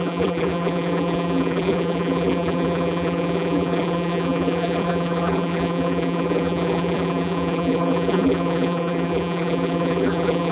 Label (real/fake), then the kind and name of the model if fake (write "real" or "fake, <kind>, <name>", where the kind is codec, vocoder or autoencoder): fake, vocoder, BigVGAN v2